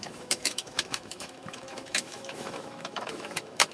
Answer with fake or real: fake